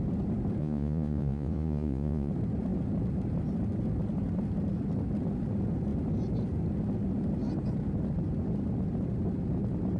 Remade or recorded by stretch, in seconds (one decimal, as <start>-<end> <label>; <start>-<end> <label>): 0.0-0.6 recorded; 0.6-2.3 remade; 2.3-10.0 recorded